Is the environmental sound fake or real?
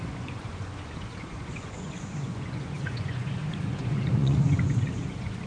fake